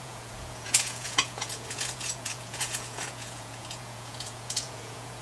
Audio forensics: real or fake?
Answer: fake